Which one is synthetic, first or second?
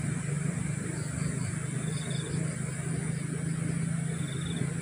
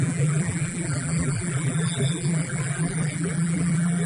second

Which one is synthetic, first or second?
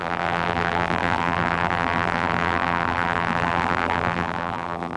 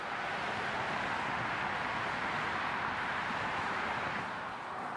first